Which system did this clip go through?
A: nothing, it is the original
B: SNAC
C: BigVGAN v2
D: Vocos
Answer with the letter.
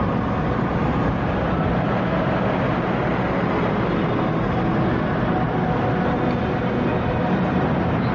A